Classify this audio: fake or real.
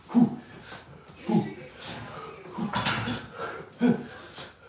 real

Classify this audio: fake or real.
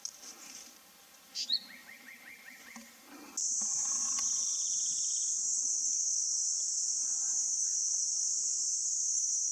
real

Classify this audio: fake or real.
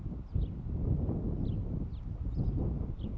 real